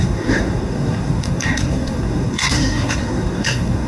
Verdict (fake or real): fake